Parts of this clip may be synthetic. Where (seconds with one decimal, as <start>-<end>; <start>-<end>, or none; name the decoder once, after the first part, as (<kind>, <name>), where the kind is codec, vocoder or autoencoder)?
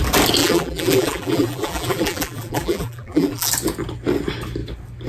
0.4-3.5 (vocoder, BigVGAN v2)